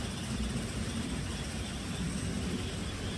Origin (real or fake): real